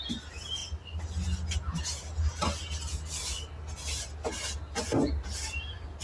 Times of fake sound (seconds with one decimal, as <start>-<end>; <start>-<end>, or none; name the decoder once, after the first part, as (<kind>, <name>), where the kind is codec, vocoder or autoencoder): none